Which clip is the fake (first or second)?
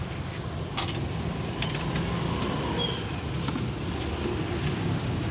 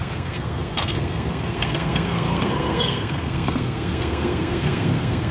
second